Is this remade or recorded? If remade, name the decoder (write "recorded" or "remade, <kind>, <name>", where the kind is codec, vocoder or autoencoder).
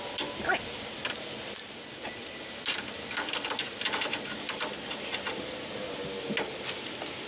recorded